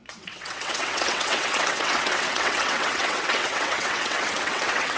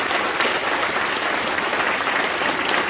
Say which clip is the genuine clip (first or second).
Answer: second